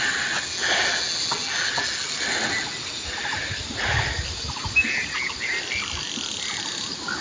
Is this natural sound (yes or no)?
yes